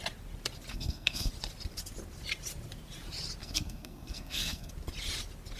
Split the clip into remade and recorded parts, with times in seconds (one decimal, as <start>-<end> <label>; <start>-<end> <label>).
0.0-0.7 recorded; 0.7-1.3 remade; 1.3-3.4 recorded; 3.4-4.7 remade; 4.7-5.6 recorded